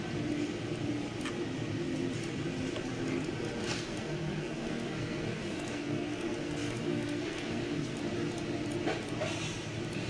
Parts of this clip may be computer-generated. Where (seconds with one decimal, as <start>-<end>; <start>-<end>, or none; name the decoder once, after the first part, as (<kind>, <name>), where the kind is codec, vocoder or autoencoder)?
3.6-8.0 (codec, SNAC)